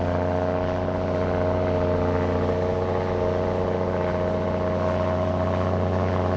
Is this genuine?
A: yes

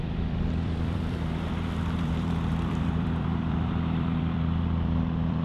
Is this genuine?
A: no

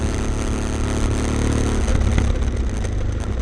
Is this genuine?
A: yes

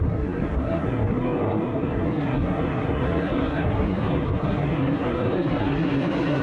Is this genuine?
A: no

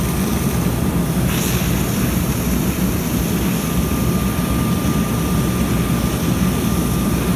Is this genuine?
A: yes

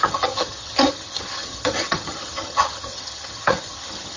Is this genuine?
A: no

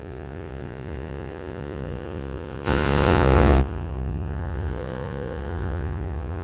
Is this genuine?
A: no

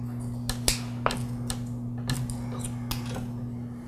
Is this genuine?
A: yes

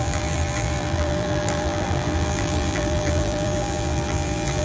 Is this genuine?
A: no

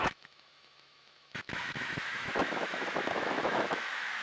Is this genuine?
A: no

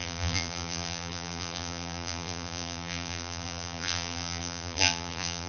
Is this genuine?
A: no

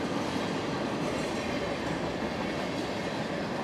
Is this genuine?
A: yes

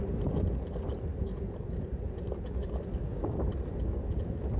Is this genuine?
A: yes